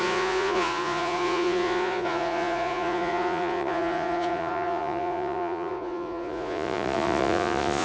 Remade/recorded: remade